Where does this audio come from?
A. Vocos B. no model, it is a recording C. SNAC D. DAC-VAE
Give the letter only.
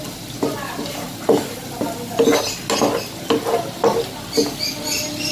B